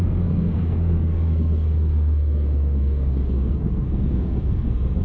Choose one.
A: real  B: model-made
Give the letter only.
B